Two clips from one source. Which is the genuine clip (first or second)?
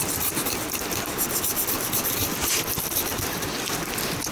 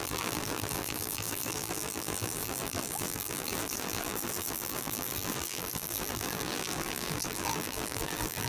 first